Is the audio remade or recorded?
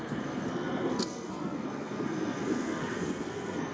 remade